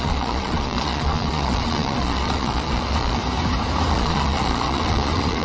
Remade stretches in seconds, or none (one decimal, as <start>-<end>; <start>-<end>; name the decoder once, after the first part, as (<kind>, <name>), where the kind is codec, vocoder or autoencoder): 0.0-3.2 (vocoder, Vocos); 3.9-5.4